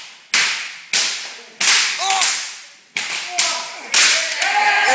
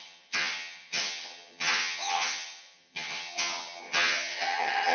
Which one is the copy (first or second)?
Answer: second